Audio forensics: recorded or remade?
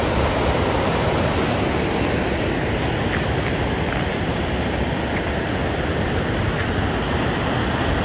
recorded